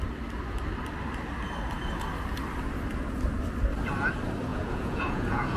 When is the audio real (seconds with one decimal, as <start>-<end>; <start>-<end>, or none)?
0.0-4.5

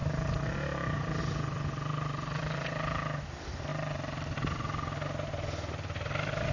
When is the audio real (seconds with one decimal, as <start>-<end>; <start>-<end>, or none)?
0.0-6.5

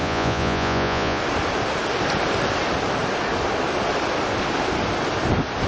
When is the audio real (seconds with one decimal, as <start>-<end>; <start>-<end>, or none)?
1.2-5.7

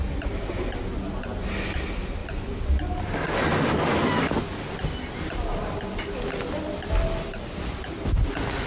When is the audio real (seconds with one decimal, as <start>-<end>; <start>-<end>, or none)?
0.0-8.7

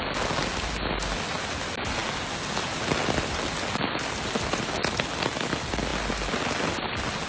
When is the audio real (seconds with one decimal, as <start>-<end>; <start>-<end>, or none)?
0.0-7.3

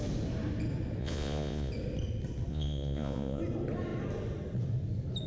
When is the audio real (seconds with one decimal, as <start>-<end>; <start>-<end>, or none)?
0.0-1.0; 1.7-2.5; 3.4-5.3

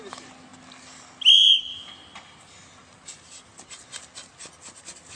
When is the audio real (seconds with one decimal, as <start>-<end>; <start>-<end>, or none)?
0.0-5.1

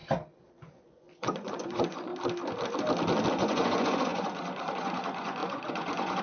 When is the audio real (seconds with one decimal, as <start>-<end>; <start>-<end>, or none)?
0.0-0.5; 2.1-3.3